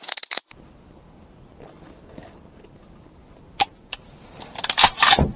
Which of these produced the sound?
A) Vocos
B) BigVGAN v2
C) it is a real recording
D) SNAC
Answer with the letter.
C